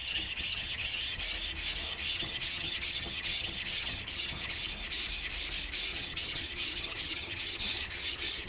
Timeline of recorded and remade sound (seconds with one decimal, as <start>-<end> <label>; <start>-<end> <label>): 0.0-1.2 remade; 1.2-2.1 recorded; 2.1-4.6 remade; 4.6-5.9 recorded; 5.9-8.5 remade